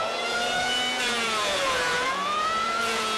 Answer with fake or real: fake